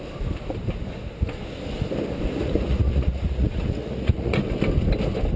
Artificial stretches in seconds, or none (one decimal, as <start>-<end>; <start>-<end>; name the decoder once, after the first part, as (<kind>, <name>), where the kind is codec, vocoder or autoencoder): 2.3-4.4 (vocoder, Vocos)